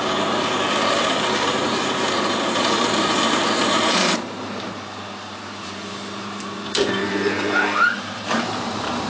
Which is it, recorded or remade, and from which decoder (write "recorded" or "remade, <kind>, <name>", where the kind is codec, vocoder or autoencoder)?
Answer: remade, vocoder, BigVGAN v2